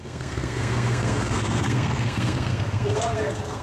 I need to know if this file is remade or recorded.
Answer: remade